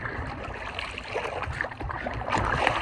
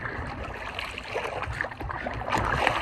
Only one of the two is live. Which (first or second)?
second